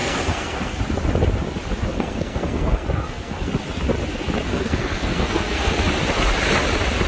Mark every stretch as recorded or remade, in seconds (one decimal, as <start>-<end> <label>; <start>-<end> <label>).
0.0-0.8 remade; 0.8-1.9 recorded; 1.9-3.5 remade; 3.5-4.5 recorded; 4.5-5.7 remade; 5.7-7.1 recorded